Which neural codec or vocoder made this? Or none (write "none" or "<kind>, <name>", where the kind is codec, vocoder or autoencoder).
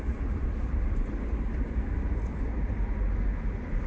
vocoder, BigVGAN v2